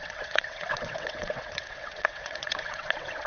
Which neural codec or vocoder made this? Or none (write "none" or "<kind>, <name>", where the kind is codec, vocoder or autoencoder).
vocoder, WaveNeXt